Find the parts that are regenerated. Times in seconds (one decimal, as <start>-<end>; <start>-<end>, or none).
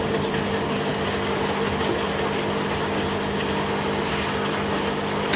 none